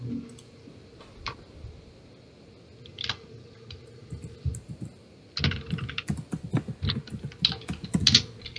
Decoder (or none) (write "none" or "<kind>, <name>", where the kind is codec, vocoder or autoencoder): none